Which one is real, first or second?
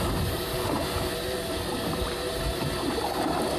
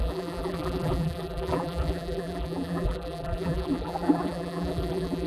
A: first